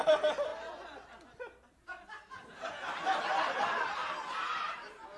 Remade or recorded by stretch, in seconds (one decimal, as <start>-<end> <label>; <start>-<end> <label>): 0.0-0.5 remade; 0.5-1.4 recorded; 1.4-1.9 remade; 1.9-4.3 recorded; 4.3-5.2 remade